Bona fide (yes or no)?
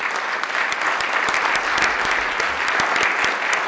yes